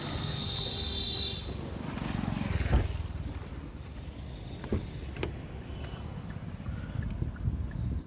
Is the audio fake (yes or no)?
no